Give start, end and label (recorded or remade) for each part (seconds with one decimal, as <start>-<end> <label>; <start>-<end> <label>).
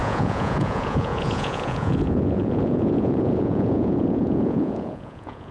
0.0-5.5 remade